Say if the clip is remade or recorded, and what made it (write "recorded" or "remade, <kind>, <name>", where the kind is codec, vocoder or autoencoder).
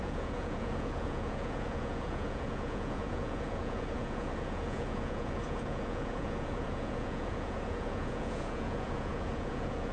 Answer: remade, vocoder, Vocos